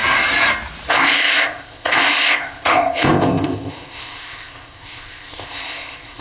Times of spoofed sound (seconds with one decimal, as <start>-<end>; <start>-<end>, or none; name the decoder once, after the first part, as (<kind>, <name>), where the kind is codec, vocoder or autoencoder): 0.9-6.2 (codec, ZipCodec)